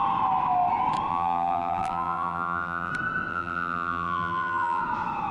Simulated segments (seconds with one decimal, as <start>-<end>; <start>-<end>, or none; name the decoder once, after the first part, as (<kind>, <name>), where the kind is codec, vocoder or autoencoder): 1.1-2.9 (vocoder, BigVGAN v2); 3.3-4.8